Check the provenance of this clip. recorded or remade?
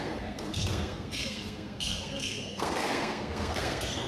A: remade